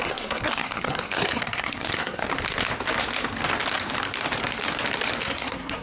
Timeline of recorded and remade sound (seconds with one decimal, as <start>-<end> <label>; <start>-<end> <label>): 0.0-2.2 remade; 2.2-5.2 recorded; 5.2-5.8 remade